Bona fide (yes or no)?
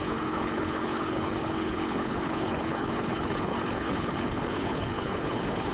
no